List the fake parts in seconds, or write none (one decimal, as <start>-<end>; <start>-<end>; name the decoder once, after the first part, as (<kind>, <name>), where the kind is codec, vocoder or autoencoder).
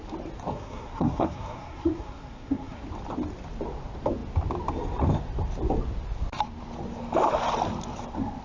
0.5-2.8 (codec, SNAC)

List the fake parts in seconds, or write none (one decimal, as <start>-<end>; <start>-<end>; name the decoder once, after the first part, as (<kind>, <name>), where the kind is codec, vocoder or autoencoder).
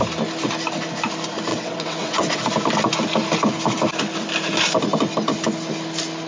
1.5-2.4 (vocoder, WaveNeXt)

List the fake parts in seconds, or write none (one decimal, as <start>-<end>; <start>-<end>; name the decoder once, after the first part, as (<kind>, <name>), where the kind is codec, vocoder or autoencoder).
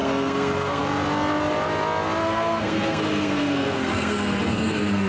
0.0-0.8 (codec, SNAC); 2.2-5.1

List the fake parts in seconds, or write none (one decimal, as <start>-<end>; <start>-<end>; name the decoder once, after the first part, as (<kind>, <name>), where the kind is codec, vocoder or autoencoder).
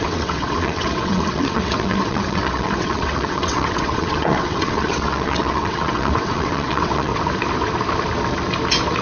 0.0-7.1 (vocoder, WaveNeXt)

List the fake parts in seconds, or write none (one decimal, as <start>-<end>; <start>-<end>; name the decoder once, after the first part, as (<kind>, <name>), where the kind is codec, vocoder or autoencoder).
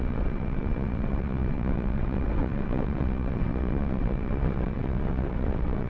0.0-5.9 (vocoder, WaveNeXt)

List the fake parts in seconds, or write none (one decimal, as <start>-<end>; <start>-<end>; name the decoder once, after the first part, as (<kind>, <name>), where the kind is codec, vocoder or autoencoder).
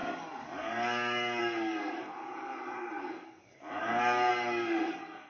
0.0-5.3 (codec, DAC)